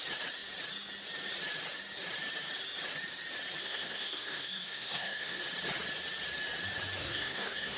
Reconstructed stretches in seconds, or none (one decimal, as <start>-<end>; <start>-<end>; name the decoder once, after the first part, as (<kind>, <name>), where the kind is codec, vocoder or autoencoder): 3.6-5.4 (codec, SNAC); 7.0-7.8

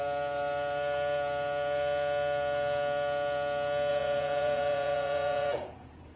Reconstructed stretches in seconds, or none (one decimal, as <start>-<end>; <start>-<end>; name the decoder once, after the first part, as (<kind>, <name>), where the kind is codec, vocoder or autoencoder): 3.9-6.2 (vocoder, Vocos)

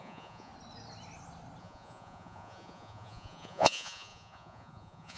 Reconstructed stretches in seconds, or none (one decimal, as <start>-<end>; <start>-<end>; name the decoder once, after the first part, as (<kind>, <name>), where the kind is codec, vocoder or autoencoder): 0.0-0.5 (vocoder, Vocos); 1.6-5.2

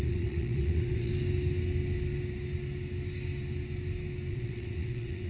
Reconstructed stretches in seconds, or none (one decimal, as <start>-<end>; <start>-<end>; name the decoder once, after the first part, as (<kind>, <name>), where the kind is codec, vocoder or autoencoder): 0.0-1.1 (vocoder, WaveNeXt); 4.3-5.3

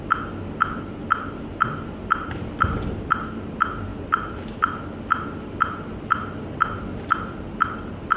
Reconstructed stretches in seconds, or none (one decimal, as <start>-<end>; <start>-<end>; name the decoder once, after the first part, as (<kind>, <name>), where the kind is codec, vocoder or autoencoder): none

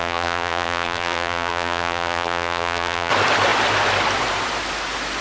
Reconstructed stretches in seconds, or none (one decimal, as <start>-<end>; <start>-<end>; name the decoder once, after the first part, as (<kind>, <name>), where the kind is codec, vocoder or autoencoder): 0.0-3.1 (vocoder, BigVGAN v2)

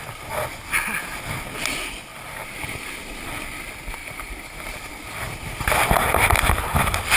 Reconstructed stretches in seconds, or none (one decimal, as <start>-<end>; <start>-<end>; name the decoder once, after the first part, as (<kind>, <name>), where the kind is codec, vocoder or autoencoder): 2.1-2.7 (vocoder, BigVGAN v2); 4.0-4.9

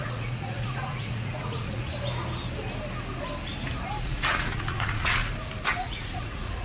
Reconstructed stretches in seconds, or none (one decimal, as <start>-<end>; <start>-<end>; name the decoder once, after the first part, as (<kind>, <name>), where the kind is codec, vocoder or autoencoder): 0.0-1.9 (vocoder, Vocos); 4.0-5.2; 5.7-6.6